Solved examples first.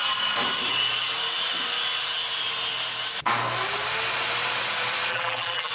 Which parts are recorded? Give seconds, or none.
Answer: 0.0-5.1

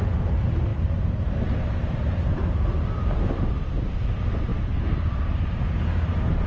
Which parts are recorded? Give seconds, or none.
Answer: none

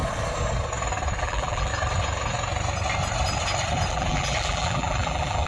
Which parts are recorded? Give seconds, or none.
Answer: 0.0-1.2; 1.7-3.9

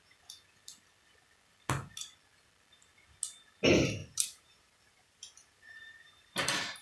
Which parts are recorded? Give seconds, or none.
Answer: 0.0-4.0

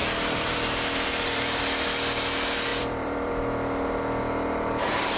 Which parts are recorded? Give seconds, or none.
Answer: 1.6-2.7; 3.3-5.2

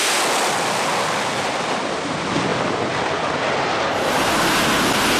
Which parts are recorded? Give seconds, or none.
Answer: 0.0-2.5; 3.4-5.2